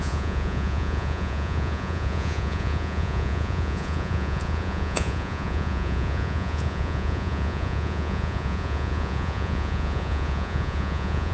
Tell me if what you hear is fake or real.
fake